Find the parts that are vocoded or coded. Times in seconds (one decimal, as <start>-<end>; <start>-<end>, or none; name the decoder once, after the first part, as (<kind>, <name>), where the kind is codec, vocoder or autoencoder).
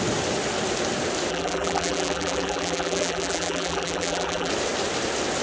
1.3-4.5 (vocoder, BigVGAN v2)